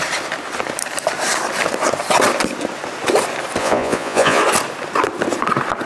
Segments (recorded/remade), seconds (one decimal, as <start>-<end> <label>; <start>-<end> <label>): 0.0-3.6 recorded; 3.6-4.4 remade; 4.4-5.9 recorded